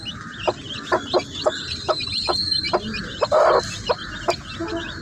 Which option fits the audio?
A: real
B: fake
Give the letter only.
A